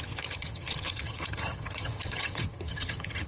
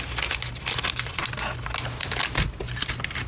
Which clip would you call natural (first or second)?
second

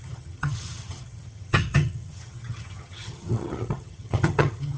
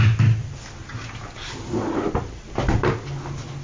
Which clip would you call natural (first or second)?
second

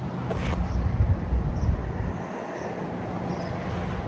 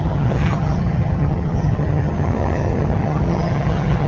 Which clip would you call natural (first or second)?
first